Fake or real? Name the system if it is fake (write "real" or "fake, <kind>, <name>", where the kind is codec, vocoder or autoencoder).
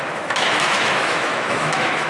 fake, autoencoder, DAC-VAE